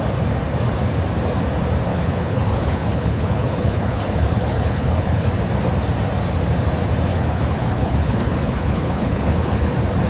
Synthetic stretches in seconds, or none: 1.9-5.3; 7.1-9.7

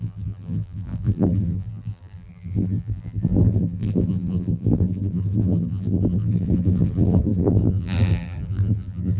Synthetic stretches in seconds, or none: 0.0-9.2

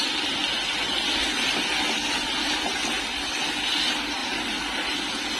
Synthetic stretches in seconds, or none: 4.2-5.4

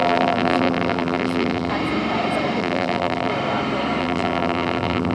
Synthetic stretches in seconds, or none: 0.0-1.7; 2.6-3.3; 4.0-5.1

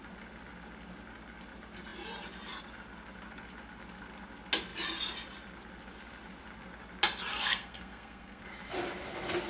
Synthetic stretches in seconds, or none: 7.3-8.4

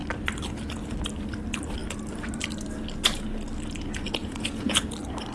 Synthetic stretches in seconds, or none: 4.2-4.8

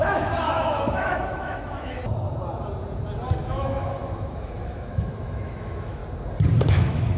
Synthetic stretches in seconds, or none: 0.0-2.0; 3.4-6.0; 6.7-7.2

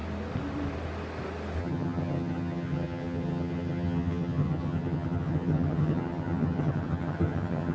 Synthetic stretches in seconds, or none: 1.6-7.7